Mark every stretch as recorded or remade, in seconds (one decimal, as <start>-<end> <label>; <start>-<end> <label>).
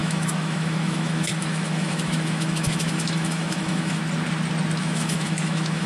0.0-4.0 remade; 4.0-4.8 recorded; 4.8-5.9 remade